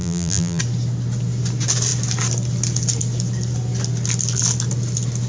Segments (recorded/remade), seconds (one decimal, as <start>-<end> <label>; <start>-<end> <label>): 0.0-0.6 remade; 0.6-5.3 recorded